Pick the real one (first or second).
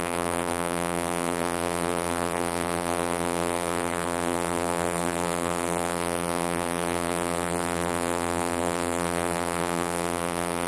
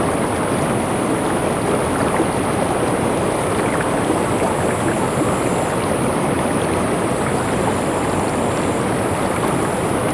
second